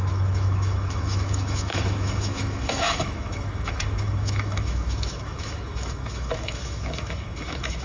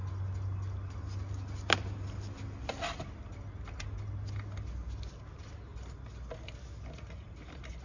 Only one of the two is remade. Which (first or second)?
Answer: first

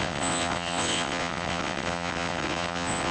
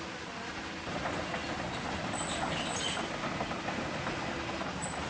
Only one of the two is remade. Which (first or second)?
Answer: first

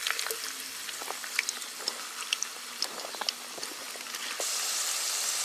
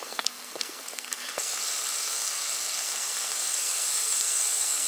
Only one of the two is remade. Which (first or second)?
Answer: second